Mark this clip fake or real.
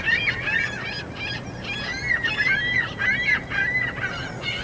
real